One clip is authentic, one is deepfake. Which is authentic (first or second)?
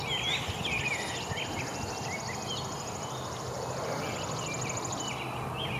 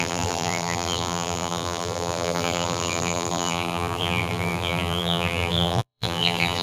first